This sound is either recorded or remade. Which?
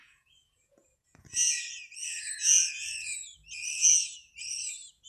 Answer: remade